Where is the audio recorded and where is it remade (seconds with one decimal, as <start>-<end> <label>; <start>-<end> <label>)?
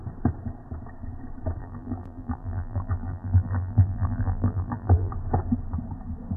0.0-1.6 recorded; 1.6-5.1 remade; 5.1-6.4 recorded